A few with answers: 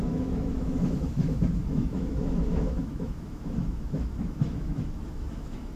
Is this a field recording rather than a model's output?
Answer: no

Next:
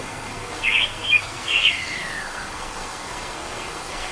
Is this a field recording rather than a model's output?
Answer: no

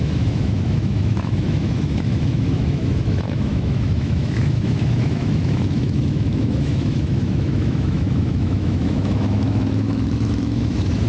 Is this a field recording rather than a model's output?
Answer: no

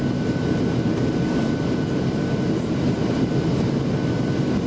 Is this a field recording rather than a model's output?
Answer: yes